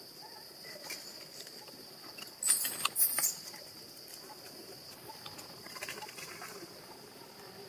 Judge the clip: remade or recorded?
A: recorded